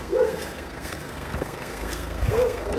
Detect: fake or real fake